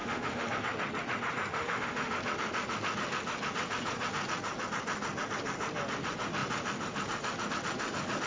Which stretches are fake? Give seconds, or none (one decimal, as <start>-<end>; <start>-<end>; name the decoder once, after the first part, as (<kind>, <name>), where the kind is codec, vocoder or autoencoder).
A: 0.0-0.5 (autoencoder, DAC-VAE); 1.5-2.1